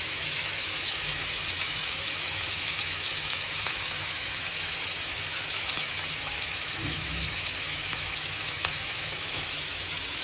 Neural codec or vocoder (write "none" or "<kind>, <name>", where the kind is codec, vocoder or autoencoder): autoencoder, DAC-VAE